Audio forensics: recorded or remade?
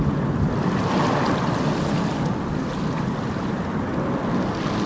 recorded